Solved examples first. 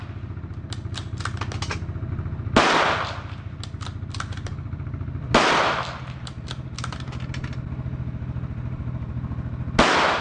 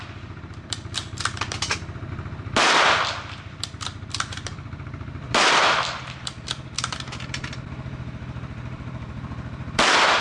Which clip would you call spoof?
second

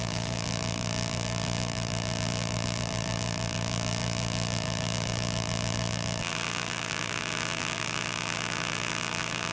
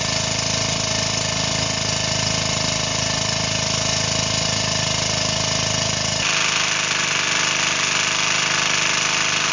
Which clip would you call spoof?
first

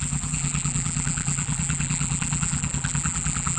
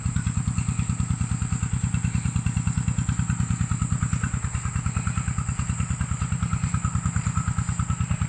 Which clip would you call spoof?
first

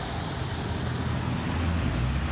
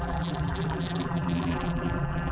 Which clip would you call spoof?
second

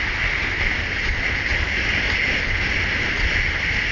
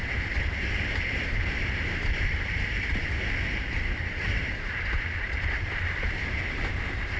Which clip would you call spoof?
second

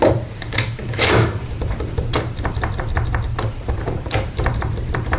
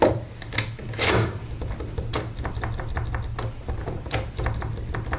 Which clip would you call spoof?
first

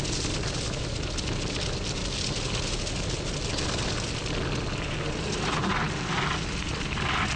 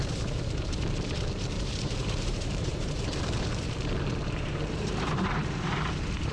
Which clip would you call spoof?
second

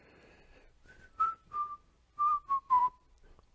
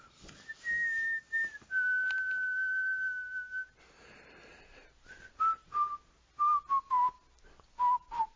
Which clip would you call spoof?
first